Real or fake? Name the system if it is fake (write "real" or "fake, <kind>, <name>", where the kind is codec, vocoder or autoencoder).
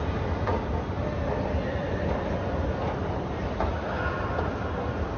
real